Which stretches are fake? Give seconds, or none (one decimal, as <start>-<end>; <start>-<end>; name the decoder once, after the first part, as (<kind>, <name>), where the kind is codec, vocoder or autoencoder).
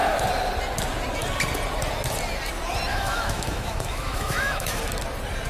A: 2.9-4.8 (autoencoder, DAC-VAE)